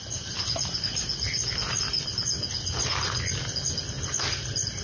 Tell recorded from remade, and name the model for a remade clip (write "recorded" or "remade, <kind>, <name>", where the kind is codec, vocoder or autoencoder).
recorded